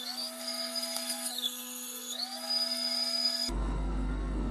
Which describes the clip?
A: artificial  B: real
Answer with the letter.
A